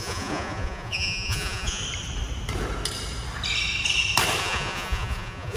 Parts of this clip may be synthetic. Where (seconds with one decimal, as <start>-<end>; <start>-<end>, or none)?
0.0-1.8; 4.4-5.6